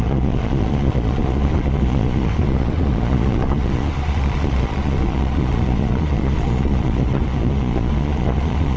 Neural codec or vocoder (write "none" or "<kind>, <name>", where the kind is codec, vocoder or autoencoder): vocoder, Vocos